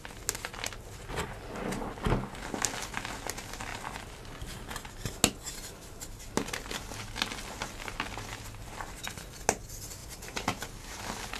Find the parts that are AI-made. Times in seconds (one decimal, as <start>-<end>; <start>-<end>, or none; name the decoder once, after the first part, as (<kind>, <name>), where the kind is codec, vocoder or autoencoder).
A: 10.0-11.0 (vocoder, BigVGAN v2)